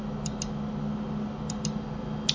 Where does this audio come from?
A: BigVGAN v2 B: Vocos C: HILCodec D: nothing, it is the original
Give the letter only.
D